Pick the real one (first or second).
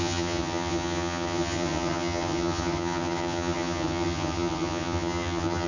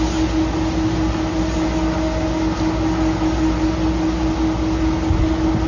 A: second